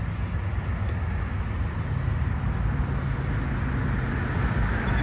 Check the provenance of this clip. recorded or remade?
recorded